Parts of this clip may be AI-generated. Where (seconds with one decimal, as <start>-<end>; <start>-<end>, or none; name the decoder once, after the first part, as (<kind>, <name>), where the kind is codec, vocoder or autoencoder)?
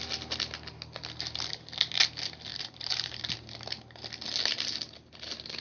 2.5-3.2 (vocoder, BigVGAN v2)